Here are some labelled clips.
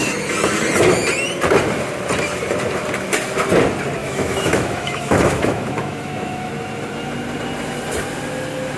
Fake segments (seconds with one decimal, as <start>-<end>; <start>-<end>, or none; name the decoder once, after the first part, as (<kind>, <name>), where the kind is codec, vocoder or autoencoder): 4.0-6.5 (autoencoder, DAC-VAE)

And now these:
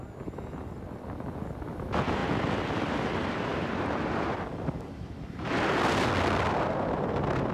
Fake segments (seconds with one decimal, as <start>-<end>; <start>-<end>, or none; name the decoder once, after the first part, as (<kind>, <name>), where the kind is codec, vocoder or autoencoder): none

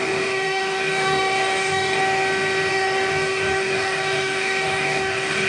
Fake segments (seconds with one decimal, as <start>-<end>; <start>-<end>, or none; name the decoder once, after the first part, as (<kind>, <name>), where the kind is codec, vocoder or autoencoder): 0.0-2.0 (codec, DAC); 2.7-5.5

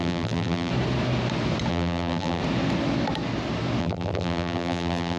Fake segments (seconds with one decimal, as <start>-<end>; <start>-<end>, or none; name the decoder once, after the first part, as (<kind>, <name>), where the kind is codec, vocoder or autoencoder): 0.0-0.7 (vocoder, BigVGAN v2); 1.7-2.4; 3.8-5.2

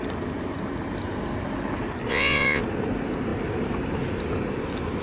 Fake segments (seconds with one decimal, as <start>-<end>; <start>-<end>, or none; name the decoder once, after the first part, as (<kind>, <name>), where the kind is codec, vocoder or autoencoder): 2.1-2.6 (vocoder, Vocos)

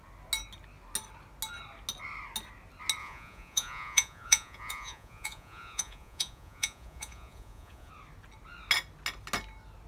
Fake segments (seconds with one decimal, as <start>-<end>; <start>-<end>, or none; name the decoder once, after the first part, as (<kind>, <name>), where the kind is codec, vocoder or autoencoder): 3.0-7.9 (vocoder, Vocos)